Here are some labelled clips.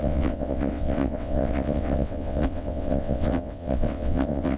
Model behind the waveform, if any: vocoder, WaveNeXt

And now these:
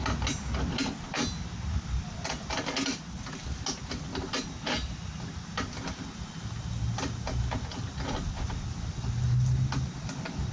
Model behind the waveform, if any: none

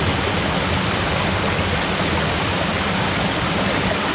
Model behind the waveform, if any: none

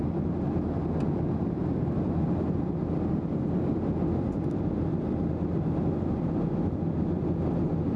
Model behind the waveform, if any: none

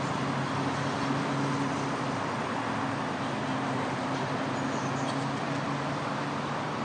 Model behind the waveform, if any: none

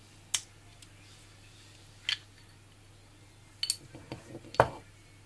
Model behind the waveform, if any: none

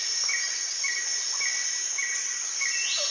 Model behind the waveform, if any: none